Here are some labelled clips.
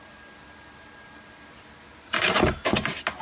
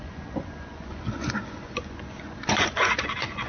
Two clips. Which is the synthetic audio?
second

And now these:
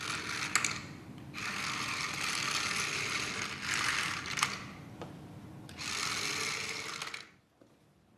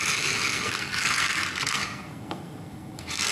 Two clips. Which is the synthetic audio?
second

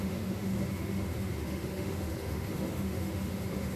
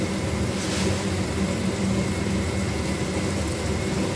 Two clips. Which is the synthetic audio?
first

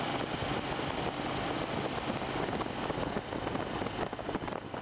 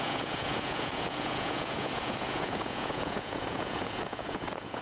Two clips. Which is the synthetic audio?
second